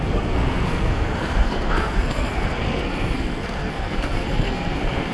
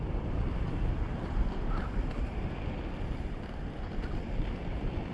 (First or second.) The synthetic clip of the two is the first